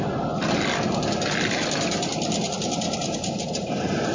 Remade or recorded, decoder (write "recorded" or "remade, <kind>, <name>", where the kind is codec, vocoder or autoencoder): recorded